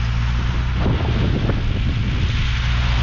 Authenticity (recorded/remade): recorded